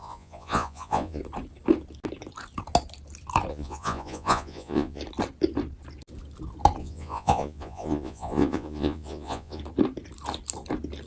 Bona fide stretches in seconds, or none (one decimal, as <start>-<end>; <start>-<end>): 1.2-3.5; 5.0-6.8; 9.6-11.1